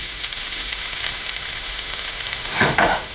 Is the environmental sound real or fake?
fake